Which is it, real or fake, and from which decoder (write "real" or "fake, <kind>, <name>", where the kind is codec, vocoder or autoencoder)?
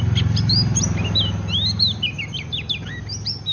real